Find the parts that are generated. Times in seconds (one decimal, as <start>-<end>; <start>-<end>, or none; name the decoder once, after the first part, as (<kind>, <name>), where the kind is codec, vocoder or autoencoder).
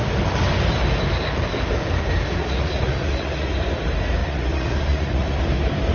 2.4-3.5 (vocoder, Vocos); 4.2-5.4